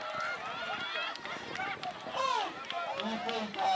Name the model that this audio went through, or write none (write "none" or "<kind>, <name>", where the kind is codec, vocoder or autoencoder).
none